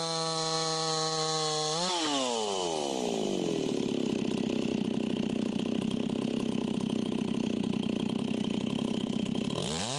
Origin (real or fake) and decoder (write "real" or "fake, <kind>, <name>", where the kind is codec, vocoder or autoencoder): real